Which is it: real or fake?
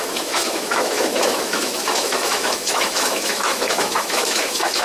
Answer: fake